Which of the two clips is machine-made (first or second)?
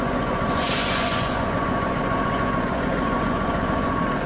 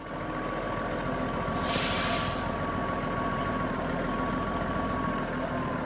first